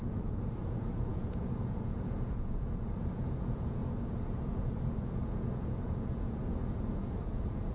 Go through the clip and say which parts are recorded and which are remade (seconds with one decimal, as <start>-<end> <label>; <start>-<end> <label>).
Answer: 0.0-7.7 remade